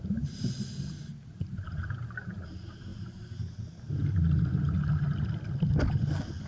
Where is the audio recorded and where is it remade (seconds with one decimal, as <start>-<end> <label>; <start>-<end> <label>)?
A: 0.0-6.5 recorded